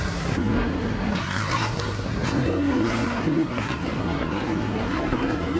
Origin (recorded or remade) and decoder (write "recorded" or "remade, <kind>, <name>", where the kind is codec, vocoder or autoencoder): remade, codec, SNAC